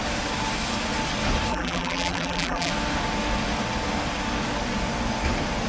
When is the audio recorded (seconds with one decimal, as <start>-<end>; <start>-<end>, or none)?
0.0-1.5; 2.7-5.7